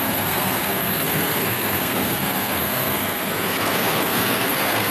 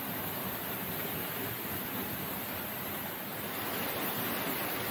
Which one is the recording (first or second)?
second